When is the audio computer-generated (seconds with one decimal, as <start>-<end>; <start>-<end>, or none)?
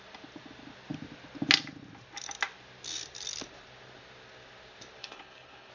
5.0-5.7